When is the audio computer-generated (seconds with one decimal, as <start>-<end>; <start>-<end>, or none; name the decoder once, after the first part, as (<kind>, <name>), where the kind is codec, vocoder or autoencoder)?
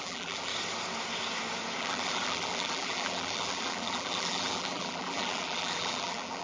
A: 0.0-0.5 (vocoder, BigVGAN v2); 1.8-6.4